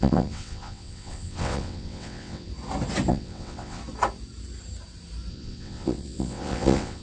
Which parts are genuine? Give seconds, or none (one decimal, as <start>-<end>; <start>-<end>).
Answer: 2.5-3.1; 3.8-5.3